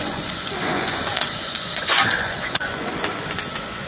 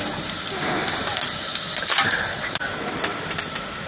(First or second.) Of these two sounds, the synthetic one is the first